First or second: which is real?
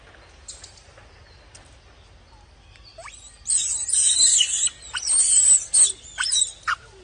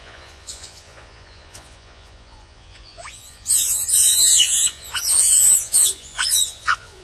first